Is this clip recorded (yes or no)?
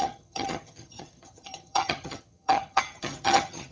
no